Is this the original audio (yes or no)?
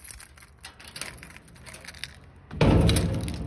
yes